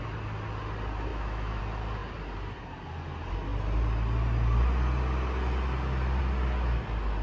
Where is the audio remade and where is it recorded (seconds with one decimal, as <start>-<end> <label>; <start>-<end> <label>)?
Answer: 0.0-1.1 recorded; 1.1-1.6 remade; 1.6-7.2 recorded